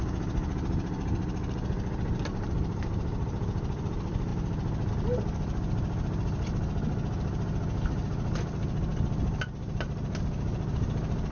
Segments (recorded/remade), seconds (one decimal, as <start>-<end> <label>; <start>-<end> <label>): 0.0-11.3 recorded